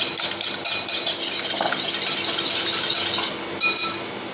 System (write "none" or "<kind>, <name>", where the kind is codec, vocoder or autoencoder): none